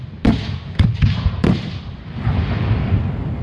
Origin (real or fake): fake